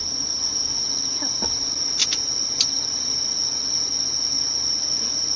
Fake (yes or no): no